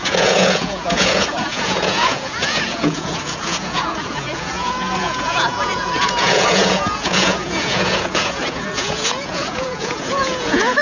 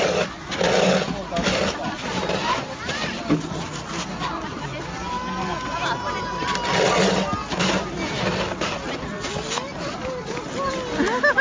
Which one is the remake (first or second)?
first